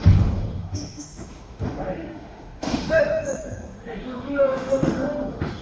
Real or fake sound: fake